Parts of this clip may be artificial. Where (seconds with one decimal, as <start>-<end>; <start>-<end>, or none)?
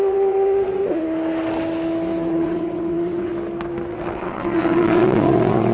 0.0-0.8; 2.3-3.3; 3.9-5.7